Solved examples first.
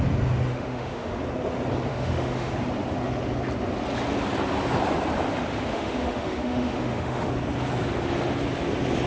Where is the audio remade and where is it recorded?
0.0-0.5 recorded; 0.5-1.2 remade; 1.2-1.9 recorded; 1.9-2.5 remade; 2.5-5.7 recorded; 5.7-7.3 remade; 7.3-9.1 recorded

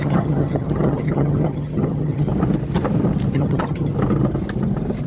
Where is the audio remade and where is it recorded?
0.0-2.3 remade; 2.3-3.3 recorded; 3.3-3.9 remade; 3.9-5.1 recorded

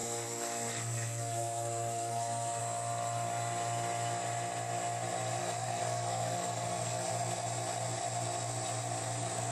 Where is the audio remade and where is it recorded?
0.0-2.6 remade; 2.6-5.4 recorded; 5.4-7.1 remade; 7.1-9.5 recorded

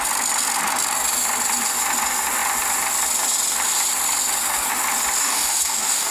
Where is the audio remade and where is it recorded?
0.0-5.2 recorded; 5.2-6.1 remade

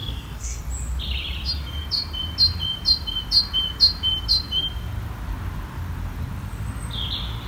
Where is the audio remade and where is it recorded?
0.0-0.6 remade; 0.6-7.5 recorded